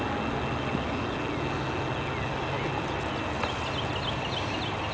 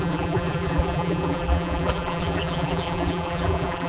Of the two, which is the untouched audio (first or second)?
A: first